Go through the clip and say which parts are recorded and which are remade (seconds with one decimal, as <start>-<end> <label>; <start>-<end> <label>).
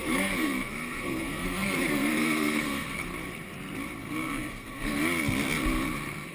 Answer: 0.0-3.0 remade; 3.0-4.0 recorded; 4.0-5.0 remade; 5.0-6.3 recorded